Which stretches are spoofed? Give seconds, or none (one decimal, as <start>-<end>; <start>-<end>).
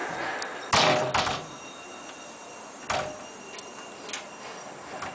none